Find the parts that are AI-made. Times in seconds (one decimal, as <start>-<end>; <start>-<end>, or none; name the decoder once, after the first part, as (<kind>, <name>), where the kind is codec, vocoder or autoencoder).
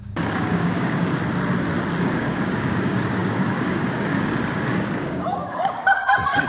0.0-1.2 (codec, DAC); 2.0-6.5